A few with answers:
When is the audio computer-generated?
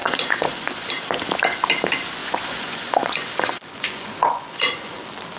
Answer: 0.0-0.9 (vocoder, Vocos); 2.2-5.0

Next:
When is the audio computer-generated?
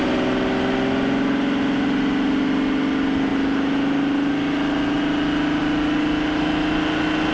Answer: none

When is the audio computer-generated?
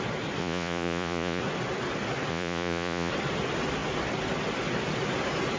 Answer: 0.4-1.4 (vocoder, Vocos); 2.3-3.1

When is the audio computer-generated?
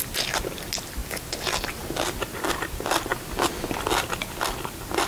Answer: none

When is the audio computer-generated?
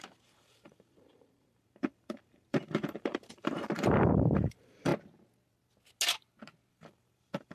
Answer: 0.0-4.9 (vocoder, BigVGAN v2); 6.7-7.5